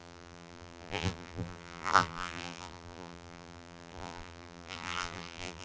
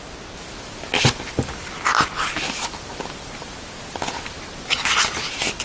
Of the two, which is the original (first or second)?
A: second